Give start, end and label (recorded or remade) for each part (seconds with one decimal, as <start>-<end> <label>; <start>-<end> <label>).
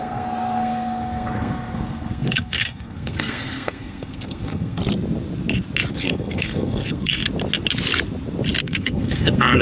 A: 0.0-4.8 remade; 4.8-5.9 recorded; 5.9-7.2 remade; 7.2-8.6 recorded; 8.6-9.6 remade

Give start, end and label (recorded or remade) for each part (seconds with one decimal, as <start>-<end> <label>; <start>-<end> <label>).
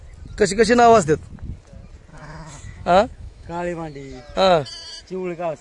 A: 0.0-2.1 recorded; 2.1-4.2 remade; 4.2-5.6 recorded